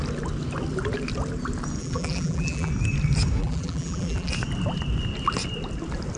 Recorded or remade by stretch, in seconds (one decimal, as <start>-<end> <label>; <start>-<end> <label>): 0.0-1.8 recorded; 1.8-2.7 remade; 2.7-3.4 recorded; 3.4-4.3 remade; 4.3-6.2 recorded